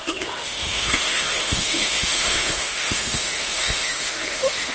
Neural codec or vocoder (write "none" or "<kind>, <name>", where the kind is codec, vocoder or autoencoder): autoencoder, DAC-VAE